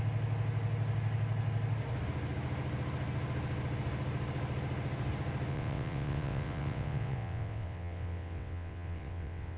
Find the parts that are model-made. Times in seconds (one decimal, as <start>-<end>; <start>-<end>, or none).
5.5-9.6